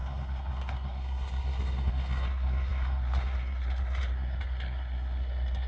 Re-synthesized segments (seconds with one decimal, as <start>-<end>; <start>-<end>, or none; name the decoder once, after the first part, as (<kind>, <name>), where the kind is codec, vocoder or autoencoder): 0.0-5.7 (codec, SNAC)